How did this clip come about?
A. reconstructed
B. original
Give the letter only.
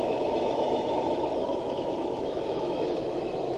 A